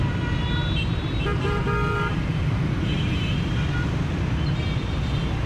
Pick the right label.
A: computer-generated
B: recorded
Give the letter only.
A